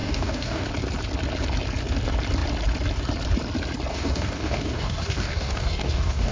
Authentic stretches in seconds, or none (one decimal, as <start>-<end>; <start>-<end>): 0.7-3.9